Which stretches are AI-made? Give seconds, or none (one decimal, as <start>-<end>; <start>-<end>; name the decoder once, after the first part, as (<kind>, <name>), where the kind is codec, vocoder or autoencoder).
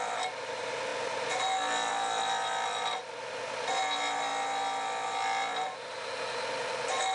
none